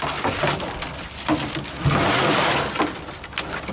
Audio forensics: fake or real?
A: real